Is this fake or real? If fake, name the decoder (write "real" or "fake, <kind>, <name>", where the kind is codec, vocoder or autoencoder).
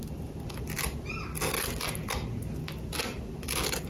real